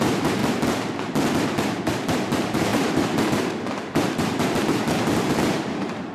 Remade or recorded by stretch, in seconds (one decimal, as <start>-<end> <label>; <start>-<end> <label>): 0.0-0.4 remade; 0.4-1.8 recorded; 1.8-6.1 remade